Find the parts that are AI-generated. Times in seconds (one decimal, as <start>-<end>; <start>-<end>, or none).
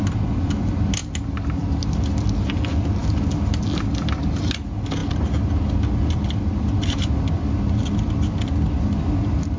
none